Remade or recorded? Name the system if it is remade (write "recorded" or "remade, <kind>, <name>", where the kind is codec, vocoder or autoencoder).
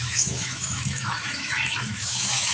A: remade, autoencoder, DAC-VAE